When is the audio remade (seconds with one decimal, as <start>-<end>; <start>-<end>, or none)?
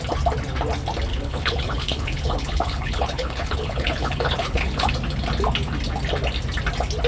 1.1-4.9